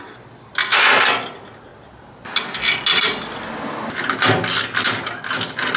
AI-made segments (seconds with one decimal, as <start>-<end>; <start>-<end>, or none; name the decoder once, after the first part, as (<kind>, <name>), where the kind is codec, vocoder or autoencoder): none